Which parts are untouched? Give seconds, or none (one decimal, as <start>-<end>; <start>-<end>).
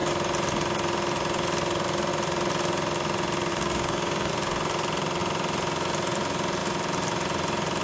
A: 0.0-3.5; 4.3-7.8